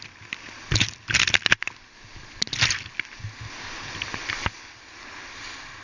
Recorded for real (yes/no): yes